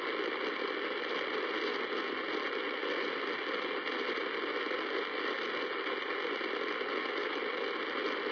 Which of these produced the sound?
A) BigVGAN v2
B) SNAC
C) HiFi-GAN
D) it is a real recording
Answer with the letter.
D